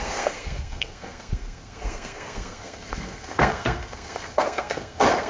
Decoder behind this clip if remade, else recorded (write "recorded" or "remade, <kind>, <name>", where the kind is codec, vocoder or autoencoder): remade, codec, SNAC